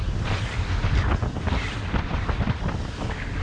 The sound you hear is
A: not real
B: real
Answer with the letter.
B